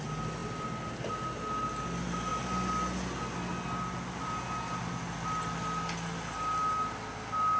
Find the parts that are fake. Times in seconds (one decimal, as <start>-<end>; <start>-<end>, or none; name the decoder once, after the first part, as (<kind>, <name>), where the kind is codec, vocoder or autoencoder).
none